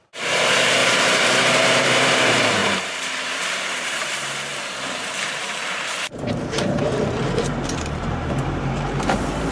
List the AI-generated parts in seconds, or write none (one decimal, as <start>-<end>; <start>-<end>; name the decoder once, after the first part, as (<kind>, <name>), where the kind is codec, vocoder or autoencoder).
0.0-9.5 (vocoder, BigVGAN v2)